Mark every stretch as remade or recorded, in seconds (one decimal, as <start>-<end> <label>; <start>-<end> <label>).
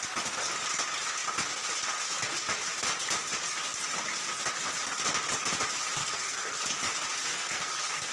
0.0-6.0 recorded; 6.0-6.6 remade; 6.6-7.3 recorded; 7.3-8.1 remade